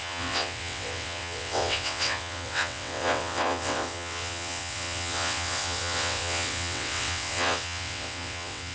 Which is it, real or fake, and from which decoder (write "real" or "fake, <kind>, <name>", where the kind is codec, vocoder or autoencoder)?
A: fake, vocoder, WaveNeXt